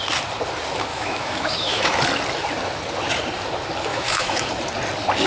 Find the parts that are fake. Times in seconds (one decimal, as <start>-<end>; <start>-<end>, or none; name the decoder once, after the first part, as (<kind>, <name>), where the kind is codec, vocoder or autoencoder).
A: 0.9-2.0 (autoencoder, DAC-VAE); 3.9-4.5